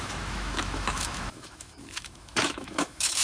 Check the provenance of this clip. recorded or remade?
remade